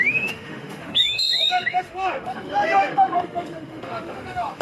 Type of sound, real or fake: fake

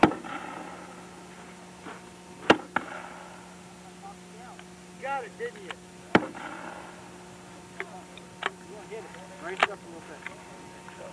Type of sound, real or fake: real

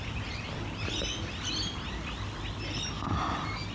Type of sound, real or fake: real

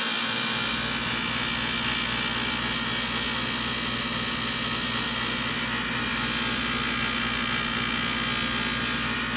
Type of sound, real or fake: real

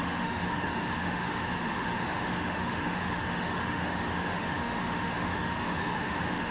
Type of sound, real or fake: fake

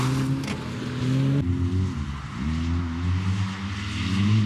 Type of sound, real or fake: real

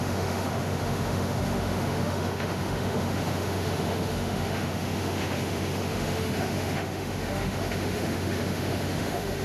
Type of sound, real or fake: fake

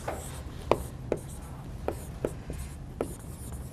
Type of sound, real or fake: real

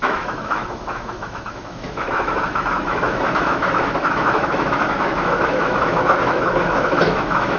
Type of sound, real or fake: fake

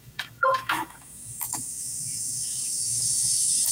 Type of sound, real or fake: fake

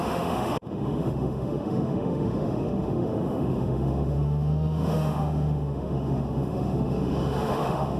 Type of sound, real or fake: fake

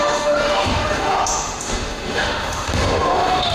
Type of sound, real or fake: fake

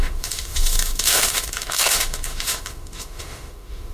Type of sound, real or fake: fake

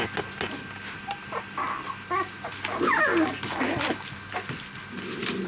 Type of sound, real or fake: real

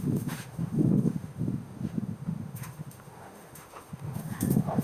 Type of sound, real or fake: fake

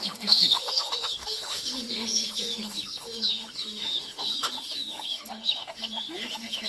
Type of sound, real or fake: fake